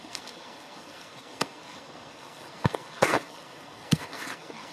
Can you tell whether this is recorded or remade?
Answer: remade